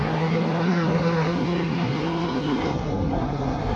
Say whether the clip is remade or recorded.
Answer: remade